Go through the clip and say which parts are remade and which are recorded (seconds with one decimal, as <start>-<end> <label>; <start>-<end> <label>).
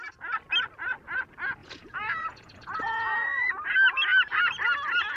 0.0-1.6 recorded; 1.6-3.5 remade; 3.5-5.2 recorded